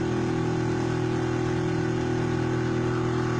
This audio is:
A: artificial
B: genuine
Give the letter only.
B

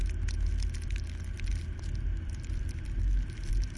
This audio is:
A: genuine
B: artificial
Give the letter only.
A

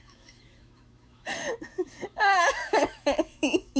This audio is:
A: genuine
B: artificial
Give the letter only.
B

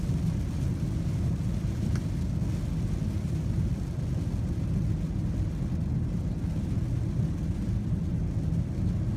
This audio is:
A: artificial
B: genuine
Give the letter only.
B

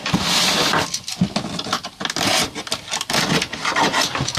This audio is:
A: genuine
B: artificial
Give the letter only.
A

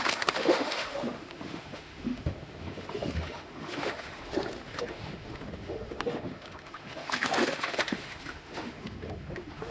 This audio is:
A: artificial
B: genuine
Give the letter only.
A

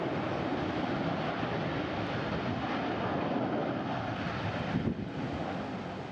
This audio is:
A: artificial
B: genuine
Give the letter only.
B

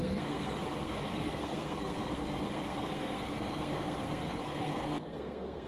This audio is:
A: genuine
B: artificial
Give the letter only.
B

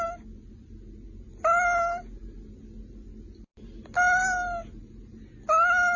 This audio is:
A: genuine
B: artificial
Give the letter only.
A